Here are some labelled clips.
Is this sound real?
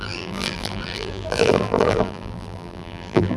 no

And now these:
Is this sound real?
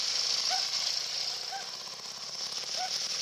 yes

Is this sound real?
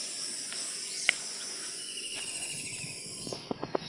no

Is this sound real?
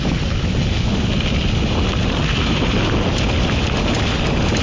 yes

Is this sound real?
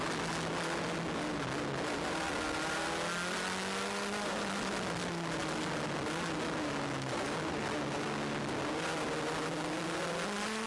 yes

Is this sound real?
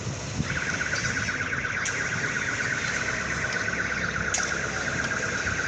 yes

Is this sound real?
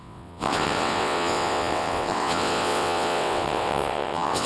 no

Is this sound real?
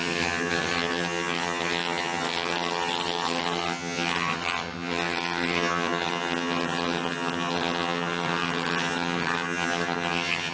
no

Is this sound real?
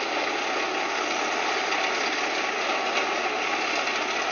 yes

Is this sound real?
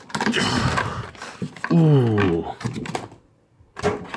yes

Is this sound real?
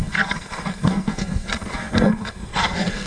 no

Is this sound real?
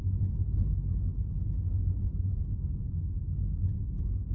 yes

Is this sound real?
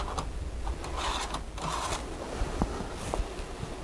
yes